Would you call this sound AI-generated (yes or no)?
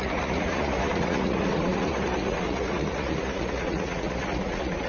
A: yes